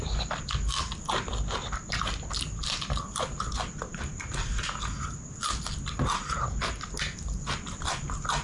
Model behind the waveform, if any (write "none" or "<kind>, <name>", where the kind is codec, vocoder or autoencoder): none